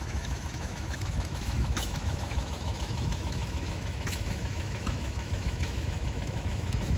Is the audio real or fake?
fake